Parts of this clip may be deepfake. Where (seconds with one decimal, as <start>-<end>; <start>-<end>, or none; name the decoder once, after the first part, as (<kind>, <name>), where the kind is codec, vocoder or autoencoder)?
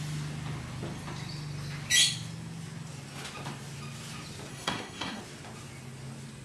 4.5-5.2 (codec, SNAC)